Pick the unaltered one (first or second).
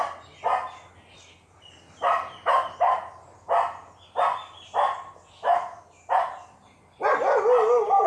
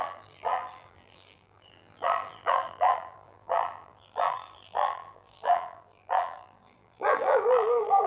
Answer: first